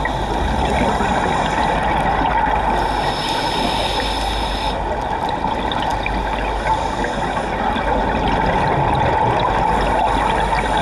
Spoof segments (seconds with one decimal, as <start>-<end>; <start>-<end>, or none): none